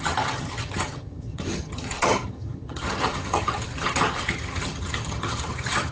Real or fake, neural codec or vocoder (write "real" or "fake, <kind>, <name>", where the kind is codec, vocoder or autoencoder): fake, vocoder, HiFi-GAN